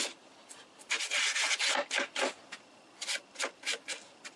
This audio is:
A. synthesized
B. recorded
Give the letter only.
B